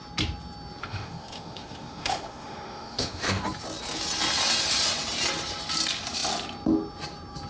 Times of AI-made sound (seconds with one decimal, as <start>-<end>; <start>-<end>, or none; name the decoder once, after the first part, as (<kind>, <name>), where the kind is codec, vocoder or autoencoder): 0.8-3.4 (autoencoder, DAC-VAE)